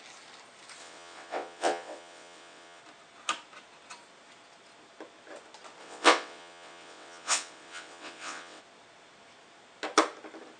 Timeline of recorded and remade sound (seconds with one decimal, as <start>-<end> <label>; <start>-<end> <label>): 0.0-0.8 recorded; 0.8-2.8 remade; 2.8-5.8 recorded; 5.8-8.6 remade; 8.6-10.6 recorded